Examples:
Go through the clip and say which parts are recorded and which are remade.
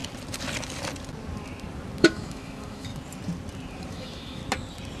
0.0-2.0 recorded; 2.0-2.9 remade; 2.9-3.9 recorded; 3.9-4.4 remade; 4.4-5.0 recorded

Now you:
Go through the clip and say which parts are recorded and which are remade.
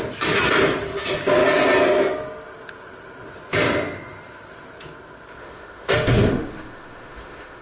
0.0-5.4 recorded; 5.4-7.6 remade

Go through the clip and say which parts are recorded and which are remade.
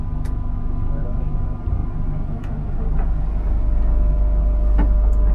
0.0-5.3 recorded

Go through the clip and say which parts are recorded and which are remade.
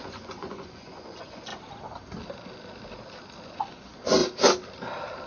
0.0-1.5 remade; 1.5-3.5 recorded; 3.5-4.2 remade; 4.2-5.3 recorded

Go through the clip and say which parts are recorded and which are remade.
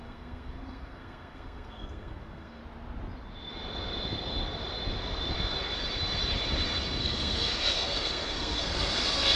0.0-2.6 remade; 2.6-7.0 recorded; 7.0-9.4 remade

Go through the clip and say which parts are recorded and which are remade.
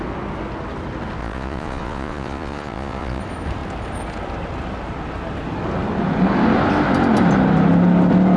0.0-1.2 recorded; 1.2-3.2 remade; 3.2-8.4 recorded